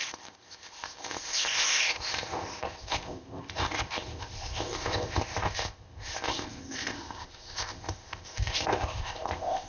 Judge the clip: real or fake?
fake